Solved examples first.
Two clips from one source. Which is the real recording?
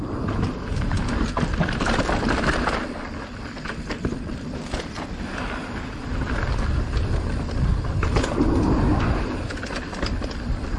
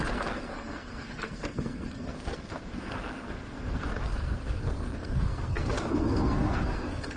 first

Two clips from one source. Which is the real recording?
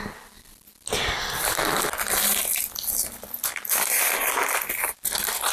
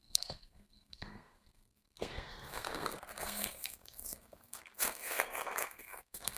first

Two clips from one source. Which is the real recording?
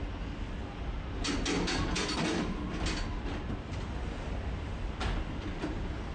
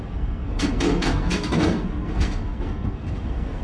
first